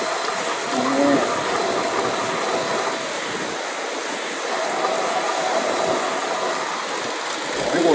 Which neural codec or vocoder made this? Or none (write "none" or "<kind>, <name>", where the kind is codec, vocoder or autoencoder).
none